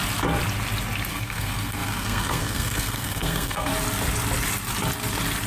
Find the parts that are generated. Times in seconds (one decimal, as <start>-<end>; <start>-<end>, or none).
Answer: 1.1-3.7